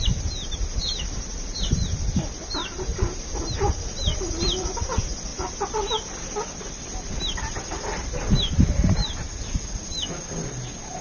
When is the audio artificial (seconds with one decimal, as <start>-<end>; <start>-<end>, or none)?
none